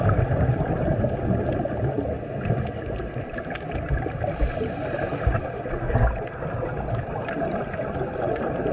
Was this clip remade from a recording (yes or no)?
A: no